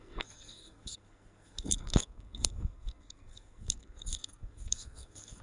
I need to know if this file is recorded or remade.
remade